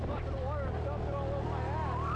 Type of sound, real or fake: real